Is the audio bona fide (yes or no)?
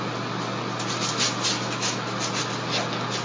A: yes